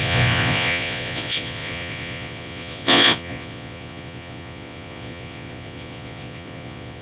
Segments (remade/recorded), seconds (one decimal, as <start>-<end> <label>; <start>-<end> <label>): 0.0-7.0 remade